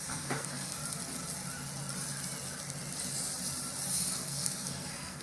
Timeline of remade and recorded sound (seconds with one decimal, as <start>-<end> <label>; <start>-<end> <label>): 0.0-0.8 remade; 0.8-3.9 recorded; 3.9-5.2 remade